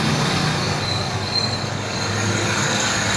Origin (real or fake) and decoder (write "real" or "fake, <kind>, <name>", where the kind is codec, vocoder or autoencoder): fake, codec, DAC